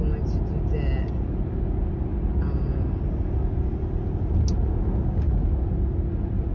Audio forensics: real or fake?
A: real